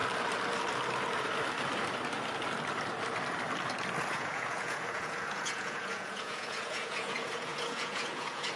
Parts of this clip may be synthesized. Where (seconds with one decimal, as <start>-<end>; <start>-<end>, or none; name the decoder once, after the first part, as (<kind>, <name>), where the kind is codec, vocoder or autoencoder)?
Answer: 4.1-8.6 (vocoder, Vocos)